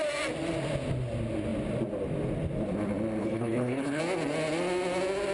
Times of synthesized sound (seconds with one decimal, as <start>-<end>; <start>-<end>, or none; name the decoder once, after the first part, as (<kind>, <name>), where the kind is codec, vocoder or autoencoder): 3.2-4.0 (codec, HILCodec)